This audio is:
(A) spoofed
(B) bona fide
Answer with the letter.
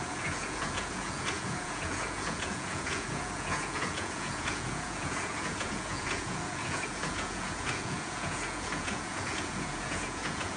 A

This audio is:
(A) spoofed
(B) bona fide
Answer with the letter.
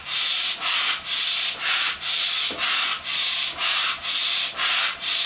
B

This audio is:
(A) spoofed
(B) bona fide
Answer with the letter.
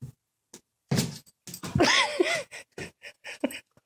B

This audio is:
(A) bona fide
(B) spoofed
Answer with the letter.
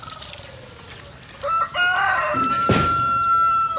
A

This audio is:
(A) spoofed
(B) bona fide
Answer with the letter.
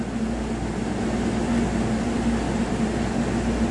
B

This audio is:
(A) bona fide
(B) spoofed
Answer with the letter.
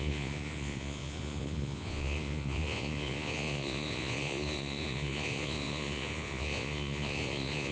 B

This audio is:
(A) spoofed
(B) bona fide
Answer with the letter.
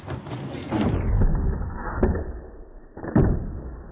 B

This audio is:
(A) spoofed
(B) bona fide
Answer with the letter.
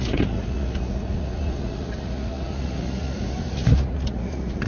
A